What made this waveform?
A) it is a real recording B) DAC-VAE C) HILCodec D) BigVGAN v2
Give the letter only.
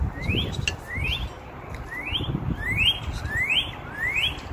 A